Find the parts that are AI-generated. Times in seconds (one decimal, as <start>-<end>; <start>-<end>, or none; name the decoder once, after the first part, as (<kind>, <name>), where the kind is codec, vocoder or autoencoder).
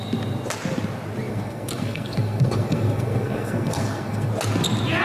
1.3-4.3 (codec, SNAC)